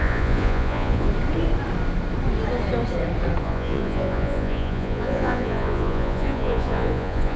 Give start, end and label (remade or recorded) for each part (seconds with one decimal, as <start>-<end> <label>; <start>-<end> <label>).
0.0-1.1 remade; 1.1-3.4 recorded; 3.4-7.4 remade